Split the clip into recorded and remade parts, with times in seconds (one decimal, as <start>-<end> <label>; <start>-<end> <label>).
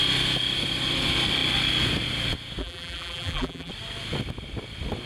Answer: 0.0-2.6 recorded; 2.6-3.7 remade; 3.7-5.1 recorded